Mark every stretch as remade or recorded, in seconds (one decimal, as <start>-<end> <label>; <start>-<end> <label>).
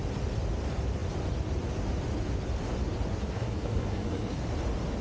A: 0.0-3.1 recorded; 3.1-4.4 remade; 4.4-5.0 recorded